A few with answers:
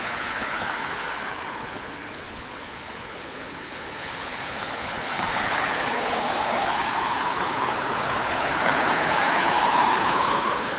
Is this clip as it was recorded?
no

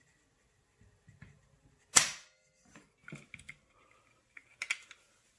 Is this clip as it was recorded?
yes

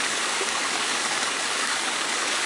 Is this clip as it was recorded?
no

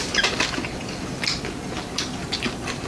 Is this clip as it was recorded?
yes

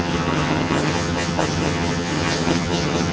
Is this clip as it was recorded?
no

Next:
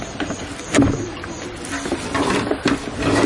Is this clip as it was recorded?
no